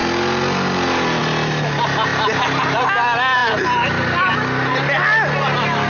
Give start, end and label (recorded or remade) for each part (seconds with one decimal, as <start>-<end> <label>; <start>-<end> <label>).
0.0-5.9 recorded